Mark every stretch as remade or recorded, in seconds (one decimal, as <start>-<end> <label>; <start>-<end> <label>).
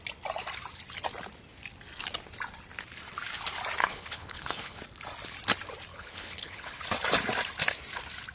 0.0-3.8 recorded; 3.8-4.8 remade; 4.8-5.9 recorded; 5.9-6.8 remade; 6.8-8.3 recorded